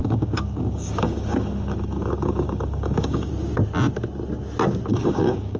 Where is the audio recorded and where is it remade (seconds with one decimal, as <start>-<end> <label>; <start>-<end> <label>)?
0.0-3.3 remade; 3.3-4.9 recorded; 4.9-5.6 remade